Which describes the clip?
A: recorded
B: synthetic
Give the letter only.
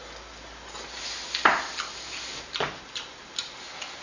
A